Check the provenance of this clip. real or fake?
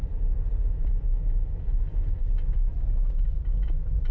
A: real